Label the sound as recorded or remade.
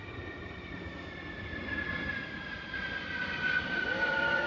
recorded